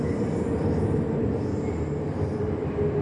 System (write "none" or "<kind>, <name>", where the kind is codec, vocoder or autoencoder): none